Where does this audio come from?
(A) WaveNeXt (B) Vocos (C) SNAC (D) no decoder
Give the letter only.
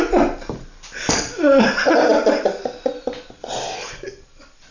D